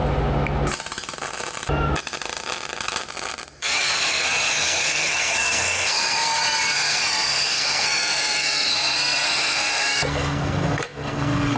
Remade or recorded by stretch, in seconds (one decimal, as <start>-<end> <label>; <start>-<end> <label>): 0.0-3.6 recorded; 3.6-11.6 remade